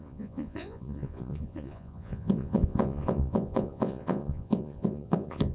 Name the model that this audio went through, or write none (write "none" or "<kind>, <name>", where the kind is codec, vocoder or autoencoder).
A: vocoder, Vocos